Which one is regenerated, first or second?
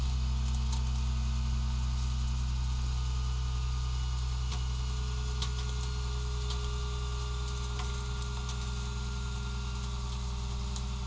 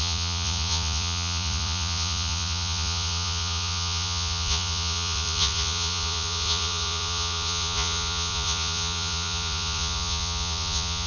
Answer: second